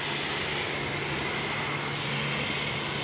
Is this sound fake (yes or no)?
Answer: no